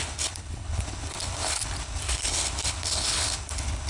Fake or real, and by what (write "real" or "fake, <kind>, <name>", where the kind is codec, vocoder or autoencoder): fake, codec, HILCodec